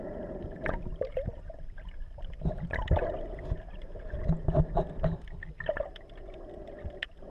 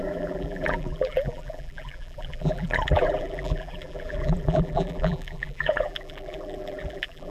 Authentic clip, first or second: first